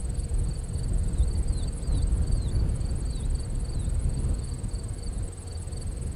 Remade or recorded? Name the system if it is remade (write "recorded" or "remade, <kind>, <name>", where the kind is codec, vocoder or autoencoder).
recorded